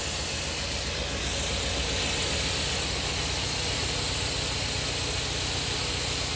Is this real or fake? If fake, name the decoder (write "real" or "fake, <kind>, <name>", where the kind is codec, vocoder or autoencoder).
real